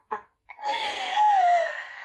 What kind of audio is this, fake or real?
fake